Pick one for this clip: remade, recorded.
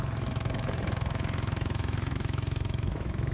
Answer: remade